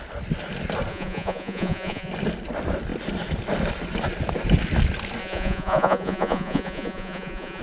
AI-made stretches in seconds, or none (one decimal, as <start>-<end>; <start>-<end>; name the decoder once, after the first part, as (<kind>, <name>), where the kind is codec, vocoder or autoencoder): 0.9-2.1 (vocoder, Vocos); 5.2-7.6